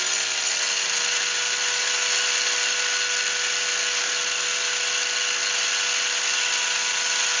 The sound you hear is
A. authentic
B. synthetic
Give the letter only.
A